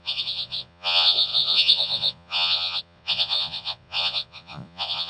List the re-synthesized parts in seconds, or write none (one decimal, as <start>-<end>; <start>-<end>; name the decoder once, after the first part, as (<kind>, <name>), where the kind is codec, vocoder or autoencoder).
0.0-5.1 (vocoder, Vocos)